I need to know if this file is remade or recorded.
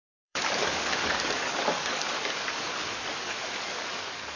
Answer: remade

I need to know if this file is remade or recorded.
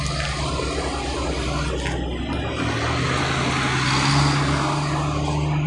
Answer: recorded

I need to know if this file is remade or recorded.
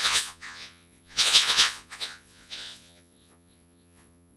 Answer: remade